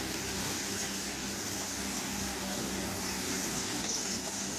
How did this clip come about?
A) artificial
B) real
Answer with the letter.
A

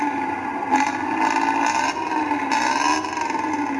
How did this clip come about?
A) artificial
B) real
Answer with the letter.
B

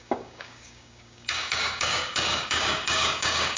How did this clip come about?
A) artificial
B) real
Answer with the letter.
A